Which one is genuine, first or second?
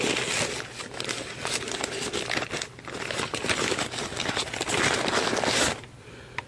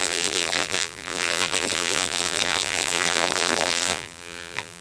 first